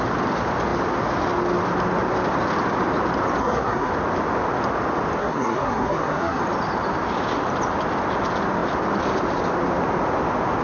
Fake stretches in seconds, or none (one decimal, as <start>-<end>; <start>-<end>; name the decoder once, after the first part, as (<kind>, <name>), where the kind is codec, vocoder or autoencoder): 3.4-3.9 (codec, SNAC); 5.2-6.4